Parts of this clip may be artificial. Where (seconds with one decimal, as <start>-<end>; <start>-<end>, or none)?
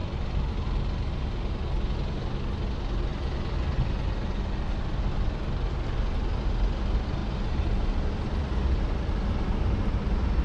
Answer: 7.2-8.1